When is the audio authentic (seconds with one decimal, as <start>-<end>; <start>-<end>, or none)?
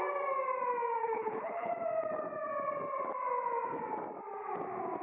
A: 0.0-1.0; 1.7-5.0